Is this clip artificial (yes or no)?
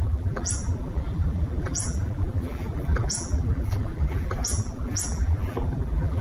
yes